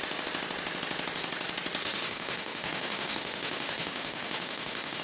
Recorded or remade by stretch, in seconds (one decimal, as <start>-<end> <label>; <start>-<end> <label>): 0.0-1.8 recorded; 1.8-5.0 remade